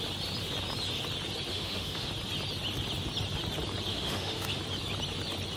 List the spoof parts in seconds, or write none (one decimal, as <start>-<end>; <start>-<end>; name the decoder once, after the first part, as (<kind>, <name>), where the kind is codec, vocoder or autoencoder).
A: 1.5-2.1 (autoencoder, DAC-VAE); 3.9-4.6